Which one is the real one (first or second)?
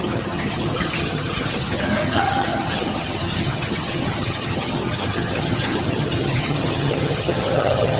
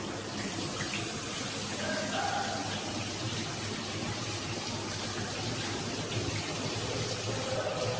second